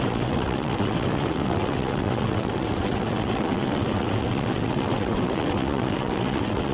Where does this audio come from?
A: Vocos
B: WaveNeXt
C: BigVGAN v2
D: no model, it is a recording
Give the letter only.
B